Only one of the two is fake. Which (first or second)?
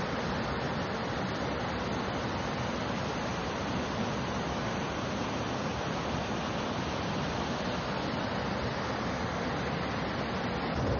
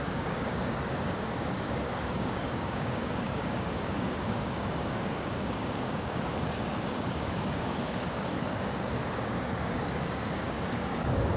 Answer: second